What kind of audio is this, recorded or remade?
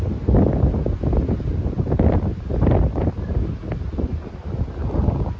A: recorded